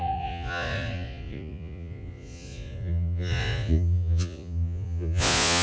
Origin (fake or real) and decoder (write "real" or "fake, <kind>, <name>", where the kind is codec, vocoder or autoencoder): fake, vocoder, Vocos